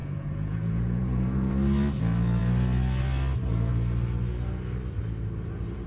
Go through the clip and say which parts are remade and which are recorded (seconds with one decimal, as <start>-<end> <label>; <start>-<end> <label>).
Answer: 0.0-1.5 remade; 1.5-5.9 recorded